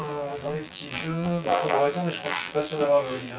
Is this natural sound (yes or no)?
no